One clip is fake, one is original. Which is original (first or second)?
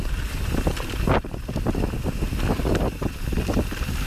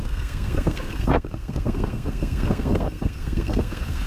first